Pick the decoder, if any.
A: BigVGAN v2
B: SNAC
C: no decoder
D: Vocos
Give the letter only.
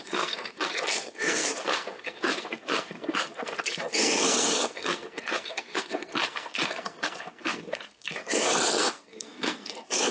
B